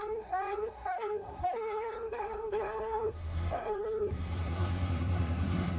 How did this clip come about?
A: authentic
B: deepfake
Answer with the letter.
B